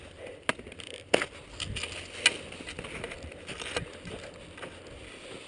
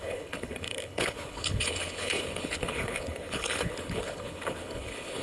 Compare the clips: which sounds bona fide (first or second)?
first